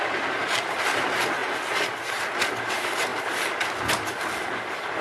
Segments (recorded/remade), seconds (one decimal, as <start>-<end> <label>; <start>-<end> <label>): 0.0-5.0 recorded